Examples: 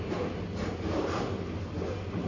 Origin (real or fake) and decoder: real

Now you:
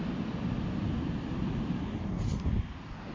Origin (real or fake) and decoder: real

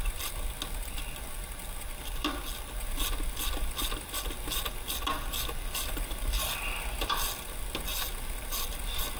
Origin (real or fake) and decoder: real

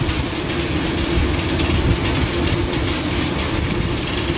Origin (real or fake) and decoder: fake, vocoder, BigVGAN v2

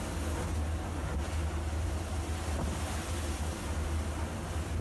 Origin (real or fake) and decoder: real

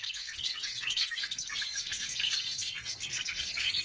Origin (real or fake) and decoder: fake, codec, SNAC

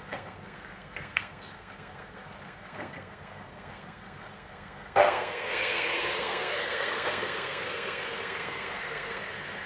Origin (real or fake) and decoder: fake, codec, SNAC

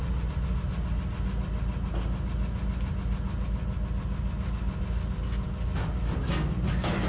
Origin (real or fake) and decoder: real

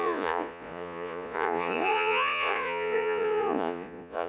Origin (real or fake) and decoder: fake, vocoder, Vocos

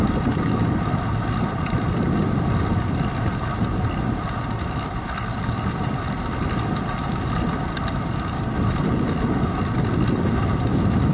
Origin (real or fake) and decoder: real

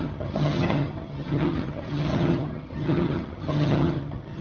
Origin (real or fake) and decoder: fake, vocoder, HiFi-GAN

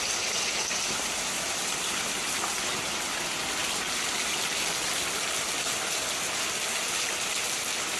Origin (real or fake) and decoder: real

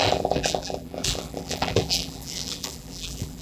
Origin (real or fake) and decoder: fake, vocoder, BigVGAN v2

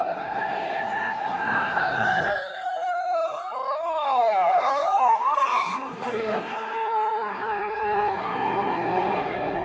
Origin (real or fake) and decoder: fake, codec, SNAC